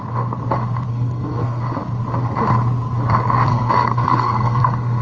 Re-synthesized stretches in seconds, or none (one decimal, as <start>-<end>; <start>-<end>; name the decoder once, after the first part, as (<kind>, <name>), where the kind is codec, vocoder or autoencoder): 0.9-1.6 (codec, SNAC); 3.5-5.0